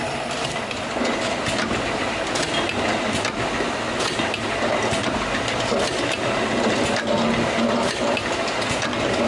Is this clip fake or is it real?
real